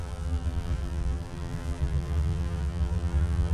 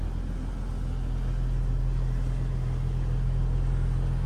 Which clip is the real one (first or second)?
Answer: second